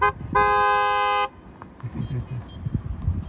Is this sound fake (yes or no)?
no